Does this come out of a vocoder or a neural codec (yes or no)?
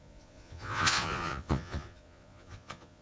yes